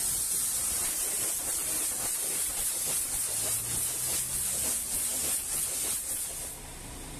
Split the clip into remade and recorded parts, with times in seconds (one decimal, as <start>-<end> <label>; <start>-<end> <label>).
0.0-0.6 recorded; 0.6-3.1 remade; 3.1-7.2 recorded